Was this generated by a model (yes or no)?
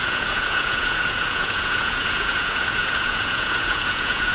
yes